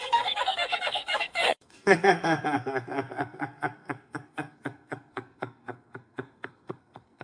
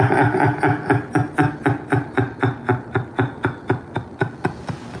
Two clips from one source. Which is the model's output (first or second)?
first